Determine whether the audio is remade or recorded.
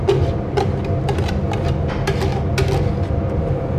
recorded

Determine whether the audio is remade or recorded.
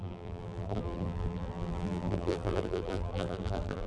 remade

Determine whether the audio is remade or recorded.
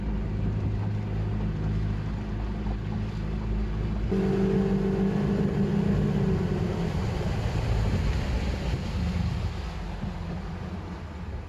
recorded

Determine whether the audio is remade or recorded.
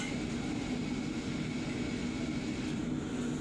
recorded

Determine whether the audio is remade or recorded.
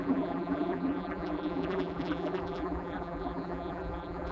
remade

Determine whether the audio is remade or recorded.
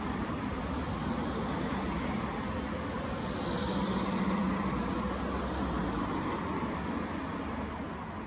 remade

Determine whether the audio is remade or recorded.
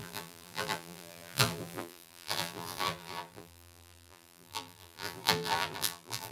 remade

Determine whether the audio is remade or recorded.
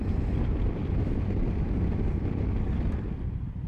remade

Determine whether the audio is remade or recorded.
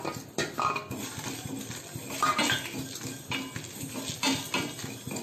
recorded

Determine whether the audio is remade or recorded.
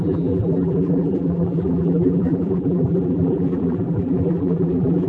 remade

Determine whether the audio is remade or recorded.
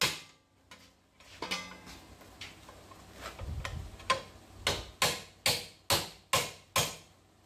recorded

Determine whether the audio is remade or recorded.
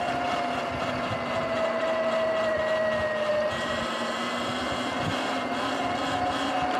recorded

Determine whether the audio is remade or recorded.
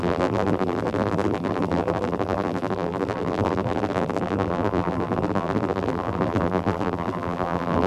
remade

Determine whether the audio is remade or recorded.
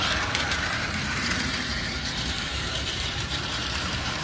remade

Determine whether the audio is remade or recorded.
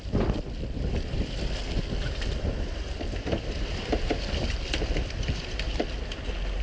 remade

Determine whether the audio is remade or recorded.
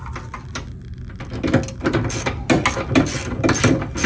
recorded